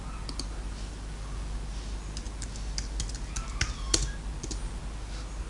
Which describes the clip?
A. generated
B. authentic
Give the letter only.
B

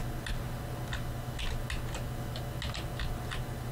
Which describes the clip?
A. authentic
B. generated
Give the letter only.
A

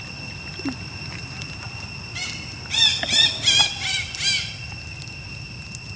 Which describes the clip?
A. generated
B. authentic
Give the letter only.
B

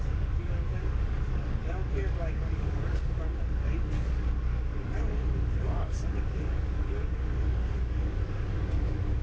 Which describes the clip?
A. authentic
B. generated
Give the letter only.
B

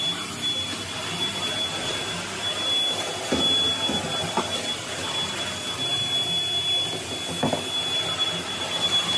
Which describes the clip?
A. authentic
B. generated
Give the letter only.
A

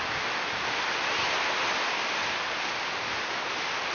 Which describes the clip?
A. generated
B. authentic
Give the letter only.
B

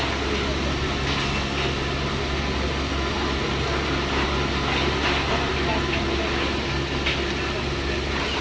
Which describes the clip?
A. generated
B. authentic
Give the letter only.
B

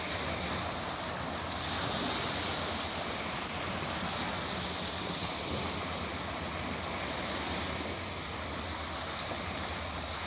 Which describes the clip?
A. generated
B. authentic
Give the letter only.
B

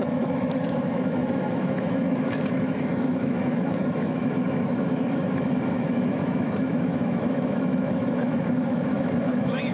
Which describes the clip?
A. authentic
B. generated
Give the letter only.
B